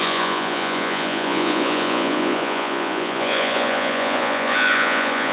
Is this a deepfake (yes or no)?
yes